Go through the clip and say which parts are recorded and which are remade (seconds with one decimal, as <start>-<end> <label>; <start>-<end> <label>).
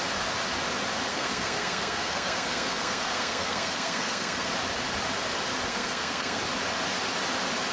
0.0-1.1 recorded; 1.1-4.5 remade; 4.5-5.7 recorded; 5.7-6.4 remade; 6.4-7.7 recorded